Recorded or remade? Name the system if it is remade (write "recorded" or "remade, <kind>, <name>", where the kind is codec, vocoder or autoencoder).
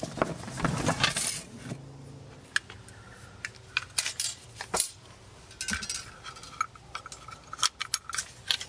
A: recorded